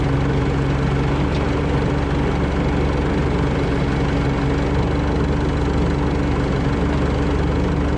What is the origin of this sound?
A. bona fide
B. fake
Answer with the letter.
A